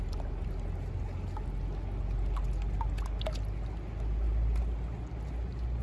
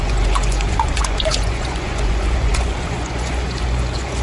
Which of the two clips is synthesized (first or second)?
second